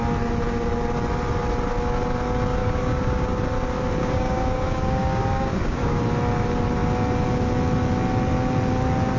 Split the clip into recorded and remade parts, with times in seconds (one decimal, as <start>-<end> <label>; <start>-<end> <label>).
0.0-2.6 recorded; 2.6-3.4 remade; 3.4-4.0 recorded; 4.0-6.0 remade; 6.0-9.2 recorded